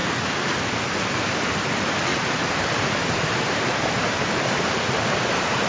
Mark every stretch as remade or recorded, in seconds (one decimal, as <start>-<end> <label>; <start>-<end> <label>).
0.0-1.0 remade; 1.0-2.1 recorded; 2.1-5.7 remade